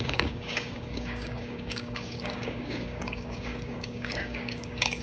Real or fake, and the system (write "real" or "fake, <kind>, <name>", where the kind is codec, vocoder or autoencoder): fake, codec, DAC